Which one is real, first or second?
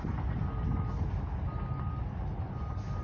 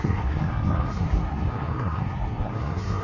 first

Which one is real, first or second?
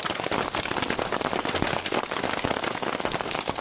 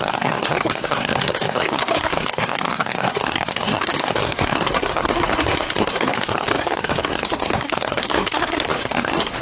first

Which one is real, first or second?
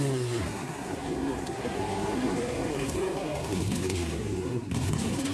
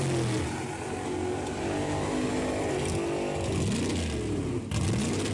second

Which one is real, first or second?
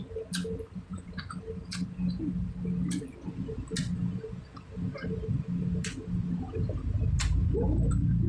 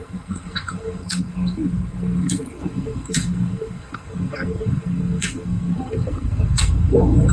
first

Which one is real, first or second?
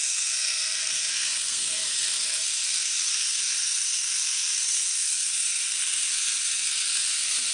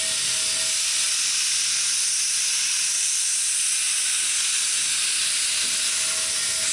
second